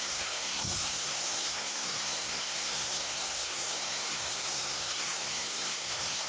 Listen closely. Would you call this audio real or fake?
fake